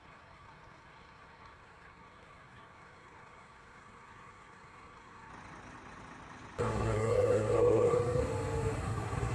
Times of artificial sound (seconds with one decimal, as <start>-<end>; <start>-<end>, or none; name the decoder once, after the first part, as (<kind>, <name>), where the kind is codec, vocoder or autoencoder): 0.0-5.3 (codec, SNAC); 6.6-8.2; 8.8-9.3